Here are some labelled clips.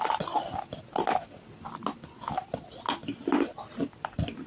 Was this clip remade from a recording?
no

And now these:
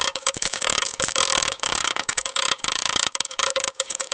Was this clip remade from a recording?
yes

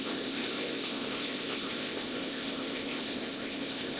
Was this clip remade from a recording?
yes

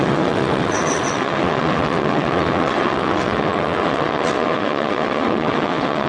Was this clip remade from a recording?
yes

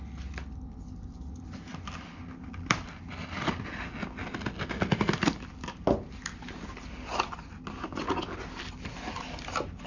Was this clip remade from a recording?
no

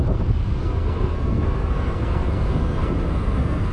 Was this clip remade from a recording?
yes